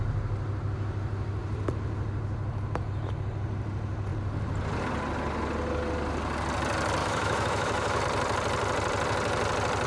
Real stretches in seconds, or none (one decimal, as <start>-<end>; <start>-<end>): 0.0-7.0; 8.0-9.9

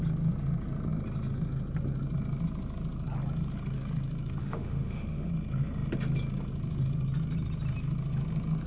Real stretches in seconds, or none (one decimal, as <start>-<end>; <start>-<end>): 0.0-4.4; 5.3-8.7

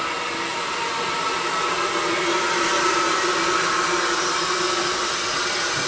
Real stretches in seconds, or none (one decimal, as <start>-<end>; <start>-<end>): 0.0-5.9

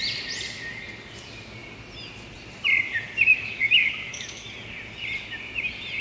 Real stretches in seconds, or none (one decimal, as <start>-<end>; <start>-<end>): 0.0-3.3; 4.5-6.0

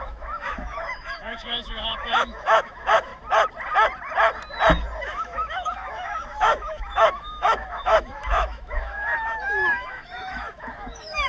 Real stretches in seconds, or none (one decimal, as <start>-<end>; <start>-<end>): 3.1-5.0

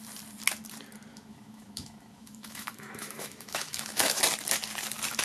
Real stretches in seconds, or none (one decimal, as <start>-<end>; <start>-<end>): 0.0-1.1; 4.2-5.2

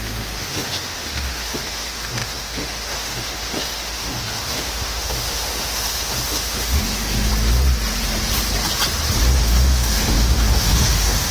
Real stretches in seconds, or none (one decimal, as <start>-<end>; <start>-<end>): 7.3-9.4